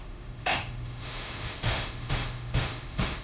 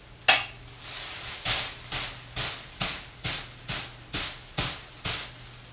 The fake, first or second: first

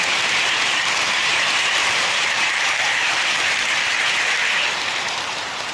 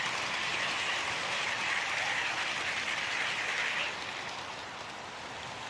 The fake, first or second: first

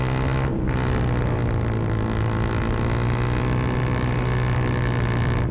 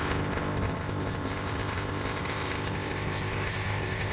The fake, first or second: second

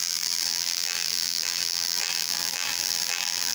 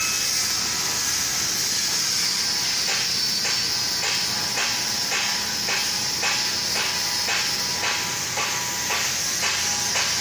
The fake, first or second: first